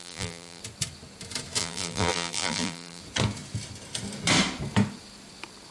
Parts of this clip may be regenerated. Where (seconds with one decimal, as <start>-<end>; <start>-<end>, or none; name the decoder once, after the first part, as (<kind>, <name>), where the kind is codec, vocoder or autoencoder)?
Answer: 0.0-0.6 (vocoder, BigVGAN v2); 1.6-3.0